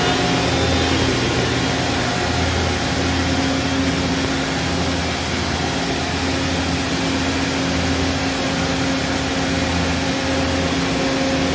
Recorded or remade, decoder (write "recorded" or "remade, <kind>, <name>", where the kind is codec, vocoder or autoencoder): recorded